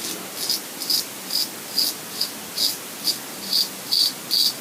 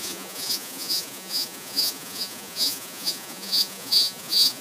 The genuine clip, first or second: first